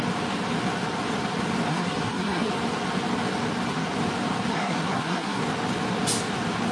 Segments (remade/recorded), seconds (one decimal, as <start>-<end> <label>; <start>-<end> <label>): 0.0-1.7 recorded; 1.7-2.5 remade; 2.5-4.5 recorded; 4.5-5.4 remade; 5.4-6.7 recorded